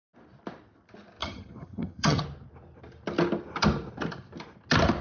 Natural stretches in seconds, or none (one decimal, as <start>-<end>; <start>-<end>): 0.0-1.2; 2.2-5.0